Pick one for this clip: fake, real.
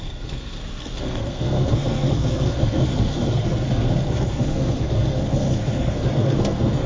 fake